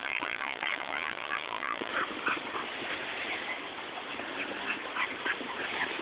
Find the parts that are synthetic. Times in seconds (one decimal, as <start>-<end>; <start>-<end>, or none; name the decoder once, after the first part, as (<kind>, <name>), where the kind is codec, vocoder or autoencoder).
0.0-1.9 (vocoder, Vocos)